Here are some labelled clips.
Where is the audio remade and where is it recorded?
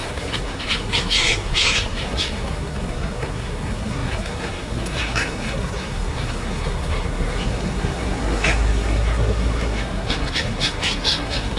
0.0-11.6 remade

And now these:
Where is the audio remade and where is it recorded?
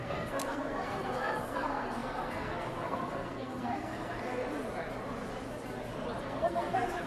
0.0-4.4 remade; 4.4-6.2 recorded; 6.2-7.1 remade